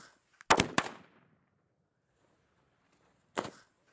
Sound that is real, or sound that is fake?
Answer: real